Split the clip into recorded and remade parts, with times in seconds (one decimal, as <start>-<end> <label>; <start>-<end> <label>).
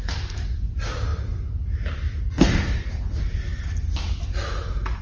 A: 0.0-5.0 recorded